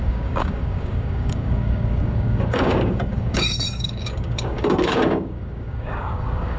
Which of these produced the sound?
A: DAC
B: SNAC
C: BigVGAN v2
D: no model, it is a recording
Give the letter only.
A